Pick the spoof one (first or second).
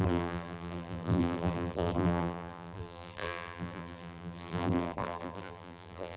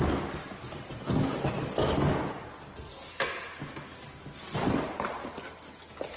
first